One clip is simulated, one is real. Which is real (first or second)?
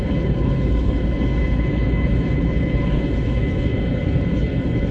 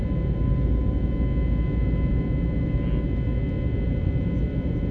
second